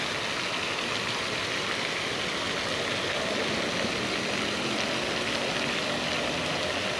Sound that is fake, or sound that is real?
real